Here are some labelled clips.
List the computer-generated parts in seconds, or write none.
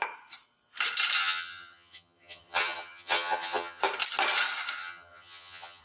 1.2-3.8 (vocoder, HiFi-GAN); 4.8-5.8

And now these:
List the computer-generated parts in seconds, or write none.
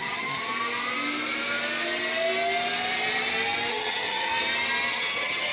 0.0-0.5 (vocoder, HiFi-GAN); 3.7-4.3; 4.9-5.5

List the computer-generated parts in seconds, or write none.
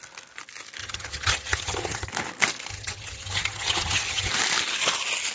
0.8-2.1 (vocoder, HiFi-GAN); 2.7-4.3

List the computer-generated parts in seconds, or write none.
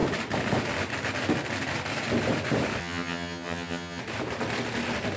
2.8-4.0 (vocoder, HiFi-GAN)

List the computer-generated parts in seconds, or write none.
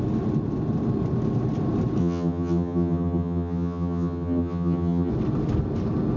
2.0-5.1 (vocoder, HiFi-GAN)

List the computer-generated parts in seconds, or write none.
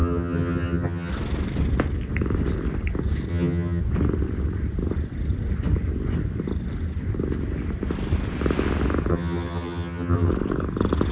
0.0-1.1 (vocoder, HiFi-GAN); 3.3-3.8; 9.1-10.3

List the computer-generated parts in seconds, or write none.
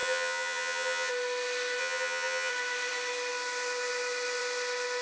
0.0-1.1 (vocoder, HiFi-GAN); 1.8-2.5